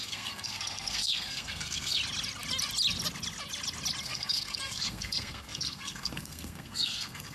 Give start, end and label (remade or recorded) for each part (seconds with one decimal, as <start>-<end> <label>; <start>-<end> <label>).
0.0-2.0 remade; 2.0-4.0 recorded; 4.0-7.3 remade